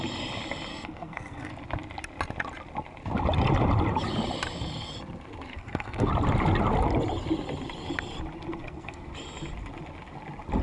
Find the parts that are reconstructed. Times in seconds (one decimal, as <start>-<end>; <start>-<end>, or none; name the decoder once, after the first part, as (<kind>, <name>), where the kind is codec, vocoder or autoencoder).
0.7-1.5 (codec, SNAC); 5.5-6.1; 8.5-9.1